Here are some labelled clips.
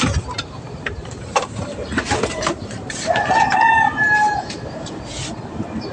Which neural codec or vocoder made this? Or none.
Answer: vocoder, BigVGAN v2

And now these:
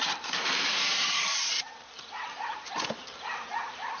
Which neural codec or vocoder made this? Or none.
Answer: vocoder, BigVGAN v2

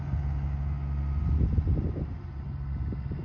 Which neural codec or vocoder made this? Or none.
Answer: none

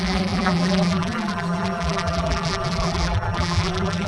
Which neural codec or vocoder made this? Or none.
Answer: vocoder, BigVGAN v2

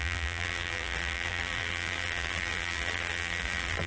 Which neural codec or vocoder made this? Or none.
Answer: vocoder, BigVGAN v2